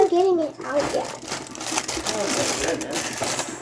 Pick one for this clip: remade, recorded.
recorded